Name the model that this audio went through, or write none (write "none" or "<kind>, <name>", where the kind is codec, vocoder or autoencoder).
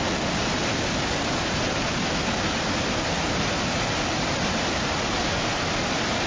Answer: none